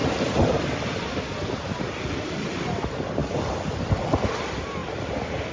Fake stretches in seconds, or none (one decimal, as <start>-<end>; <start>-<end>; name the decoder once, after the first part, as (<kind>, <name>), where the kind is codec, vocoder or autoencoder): none